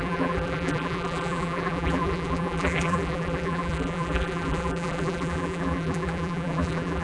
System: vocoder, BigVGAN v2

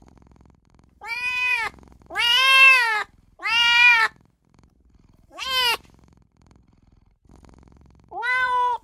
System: vocoder, BigVGAN v2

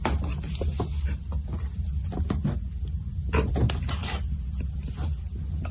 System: none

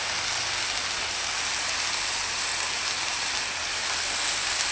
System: none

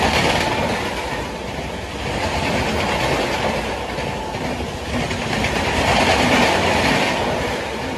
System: none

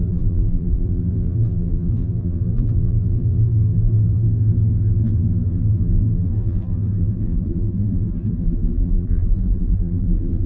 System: vocoder, BigVGAN v2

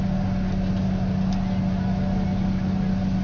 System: none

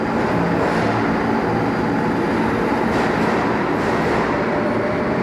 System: none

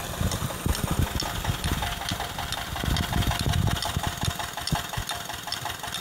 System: none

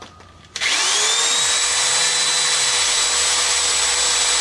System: none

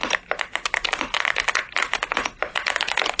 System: none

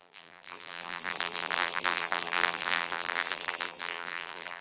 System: vocoder, BigVGAN v2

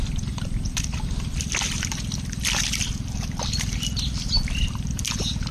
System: vocoder, BigVGAN v2